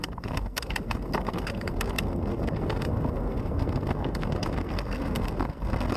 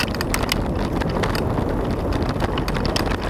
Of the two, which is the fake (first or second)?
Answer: first